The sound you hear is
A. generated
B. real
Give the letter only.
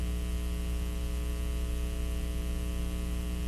B